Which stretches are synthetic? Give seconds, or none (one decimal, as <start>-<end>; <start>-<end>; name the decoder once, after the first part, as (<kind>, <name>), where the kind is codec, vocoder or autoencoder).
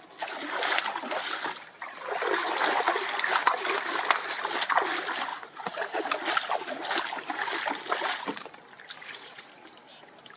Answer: 5.3-6.0 (vocoder, Vocos); 9.0-9.5